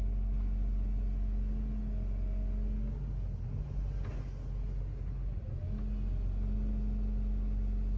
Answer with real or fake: real